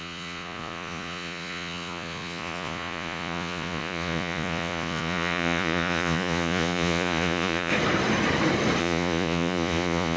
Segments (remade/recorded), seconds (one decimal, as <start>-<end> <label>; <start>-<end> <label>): 0.0-7.7 remade; 7.7-8.8 recorded; 8.8-10.2 remade